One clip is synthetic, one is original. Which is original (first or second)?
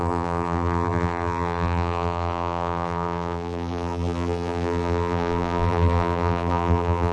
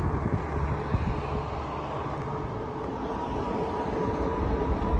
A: second